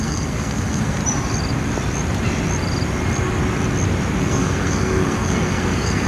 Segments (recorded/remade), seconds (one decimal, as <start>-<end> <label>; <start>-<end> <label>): 0.0-1.0 remade; 1.0-4.2 recorded; 4.2-6.1 remade